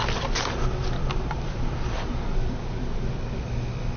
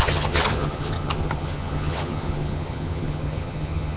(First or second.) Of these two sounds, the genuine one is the first